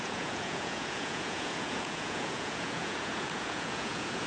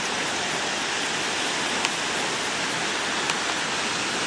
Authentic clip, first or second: second